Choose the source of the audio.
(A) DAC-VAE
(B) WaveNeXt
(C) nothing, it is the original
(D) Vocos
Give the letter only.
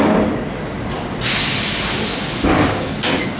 C